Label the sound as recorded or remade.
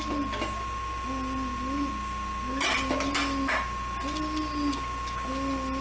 recorded